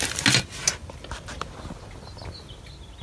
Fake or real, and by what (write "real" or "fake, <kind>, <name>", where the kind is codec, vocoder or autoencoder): real